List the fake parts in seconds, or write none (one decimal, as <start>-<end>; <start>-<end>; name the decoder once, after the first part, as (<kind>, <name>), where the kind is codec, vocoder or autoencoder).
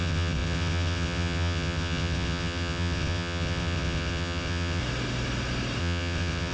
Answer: 0.0-4.8 (vocoder, WaveNeXt); 5.8-6.5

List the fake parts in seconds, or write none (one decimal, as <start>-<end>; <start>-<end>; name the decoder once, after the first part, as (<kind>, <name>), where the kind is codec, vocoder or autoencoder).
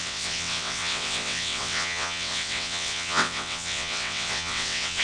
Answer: 0.0-5.0 (vocoder, WaveNeXt)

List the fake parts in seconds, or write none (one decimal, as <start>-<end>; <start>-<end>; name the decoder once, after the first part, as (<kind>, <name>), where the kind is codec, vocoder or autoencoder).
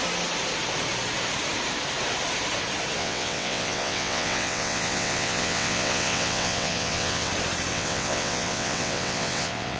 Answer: 3.0-7.3 (vocoder, WaveNeXt); 7.7-9.8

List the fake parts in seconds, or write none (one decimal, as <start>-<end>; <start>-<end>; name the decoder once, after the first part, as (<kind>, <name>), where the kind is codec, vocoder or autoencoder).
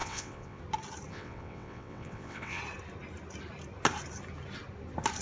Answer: 0.0-0.6 (vocoder, WaveNeXt); 1.1-2.6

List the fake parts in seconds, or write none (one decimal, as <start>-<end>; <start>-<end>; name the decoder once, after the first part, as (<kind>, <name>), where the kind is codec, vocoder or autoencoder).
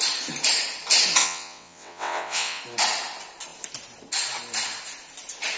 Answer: 1.2-2.6 (vocoder, WaveNeXt)